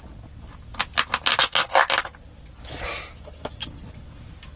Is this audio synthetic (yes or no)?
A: no